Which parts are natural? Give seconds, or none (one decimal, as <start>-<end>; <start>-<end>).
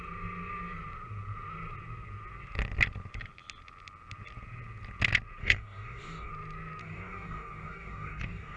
0.0-5.4; 6.3-6.8